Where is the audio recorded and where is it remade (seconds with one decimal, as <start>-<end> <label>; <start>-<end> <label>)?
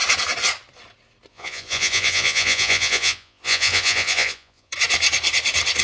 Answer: 0.0-1.3 recorded; 1.3-4.7 remade; 4.7-5.8 recorded